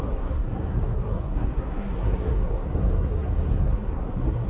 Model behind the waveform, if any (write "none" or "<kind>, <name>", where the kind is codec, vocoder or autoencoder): codec, SNAC